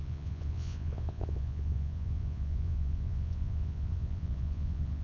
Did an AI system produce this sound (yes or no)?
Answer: yes